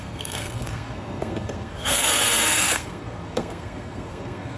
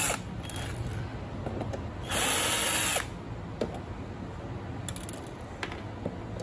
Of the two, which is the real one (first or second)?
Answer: second